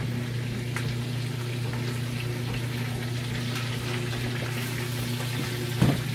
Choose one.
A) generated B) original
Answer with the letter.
B